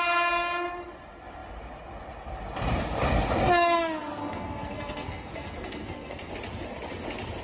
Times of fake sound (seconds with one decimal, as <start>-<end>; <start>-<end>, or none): 4.2-6.3